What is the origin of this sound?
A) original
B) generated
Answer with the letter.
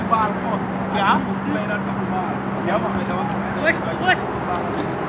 A